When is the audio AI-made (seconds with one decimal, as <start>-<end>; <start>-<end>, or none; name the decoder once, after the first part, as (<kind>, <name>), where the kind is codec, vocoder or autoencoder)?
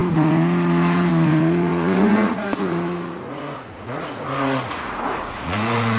0.0-6.0 (vocoder, Vocos)